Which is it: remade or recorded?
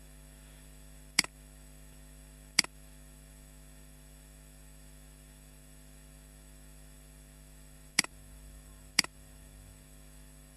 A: remade